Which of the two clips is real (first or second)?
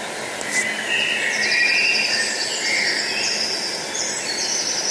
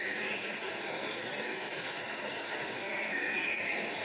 first